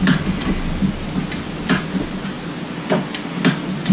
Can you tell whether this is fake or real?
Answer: real